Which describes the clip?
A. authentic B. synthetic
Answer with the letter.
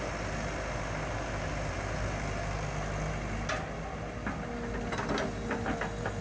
A